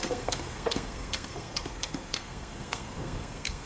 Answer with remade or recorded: remade